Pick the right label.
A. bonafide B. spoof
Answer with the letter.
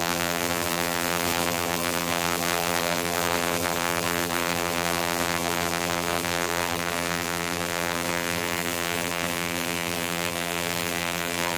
B